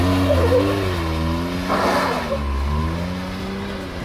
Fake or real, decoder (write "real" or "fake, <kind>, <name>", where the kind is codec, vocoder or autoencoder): real